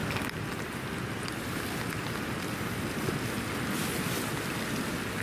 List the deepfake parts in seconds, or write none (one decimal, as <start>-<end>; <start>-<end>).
none